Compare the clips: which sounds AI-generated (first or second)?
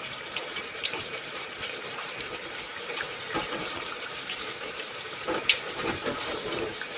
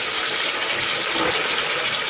first